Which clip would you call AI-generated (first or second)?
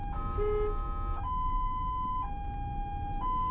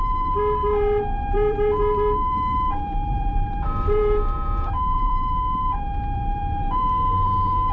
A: second